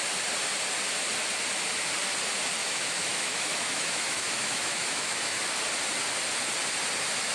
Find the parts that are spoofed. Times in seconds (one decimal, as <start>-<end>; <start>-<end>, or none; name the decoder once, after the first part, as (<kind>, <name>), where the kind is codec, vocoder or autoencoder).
2.6-5.4 (autoencoder, DAC-VAE)